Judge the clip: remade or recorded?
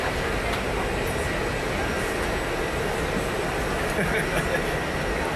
recorded